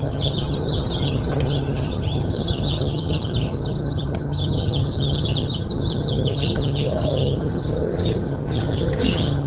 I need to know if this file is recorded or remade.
remade